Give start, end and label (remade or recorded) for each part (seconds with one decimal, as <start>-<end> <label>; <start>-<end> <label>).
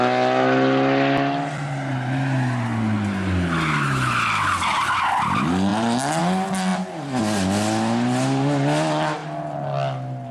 0.0-10.3 recorded